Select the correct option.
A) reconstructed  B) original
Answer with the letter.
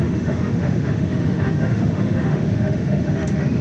A